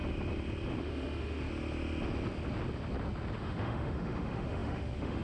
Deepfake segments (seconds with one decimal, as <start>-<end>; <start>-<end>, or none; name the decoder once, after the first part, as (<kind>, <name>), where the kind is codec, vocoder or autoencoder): 0.8-1.5 (autoencoder, DAC-VAE); 3.4-5.2